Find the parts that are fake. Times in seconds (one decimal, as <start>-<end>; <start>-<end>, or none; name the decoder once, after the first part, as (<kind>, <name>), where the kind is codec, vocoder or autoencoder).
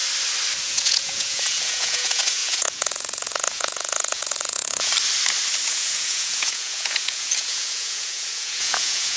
0.6-4.9 (vocoder, Vocos); 5.7-9.2